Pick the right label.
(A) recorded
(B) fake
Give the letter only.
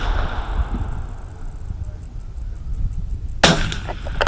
A